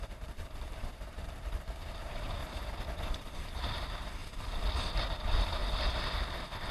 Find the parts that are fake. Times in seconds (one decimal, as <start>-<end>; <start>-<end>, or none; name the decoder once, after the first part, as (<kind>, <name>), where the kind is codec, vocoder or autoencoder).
0.0-2.4 (vocoder, BigVGAN v2); 3.1-4.2; 5.1-5.6